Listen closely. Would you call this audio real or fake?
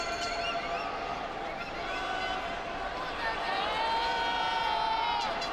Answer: real